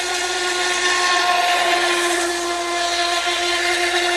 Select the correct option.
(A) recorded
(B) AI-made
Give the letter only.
A